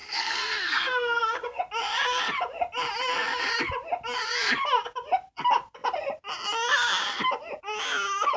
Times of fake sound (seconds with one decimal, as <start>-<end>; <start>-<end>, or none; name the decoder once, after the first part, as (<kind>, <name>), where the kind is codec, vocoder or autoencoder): 0.0-1.6 (codec, SNAC)